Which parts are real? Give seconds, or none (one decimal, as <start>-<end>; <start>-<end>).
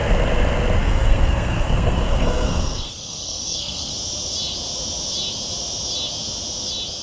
0.0-0.8; 3.9-7.0